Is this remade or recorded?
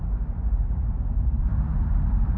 remade